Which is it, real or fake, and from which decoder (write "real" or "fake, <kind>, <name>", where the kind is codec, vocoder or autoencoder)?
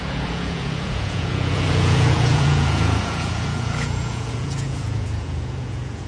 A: fake, vocoder, Vocos